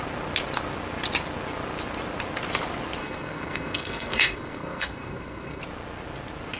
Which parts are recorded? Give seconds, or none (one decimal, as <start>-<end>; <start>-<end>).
0.0-3.0; 5.6-6.6